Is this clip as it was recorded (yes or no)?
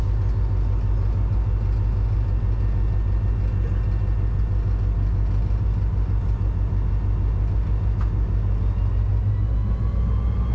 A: yes